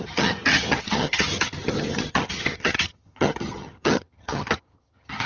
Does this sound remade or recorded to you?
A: remade